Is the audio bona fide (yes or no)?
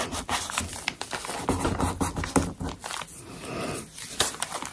yes